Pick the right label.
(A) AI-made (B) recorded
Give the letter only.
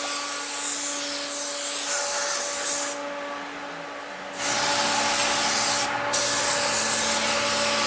B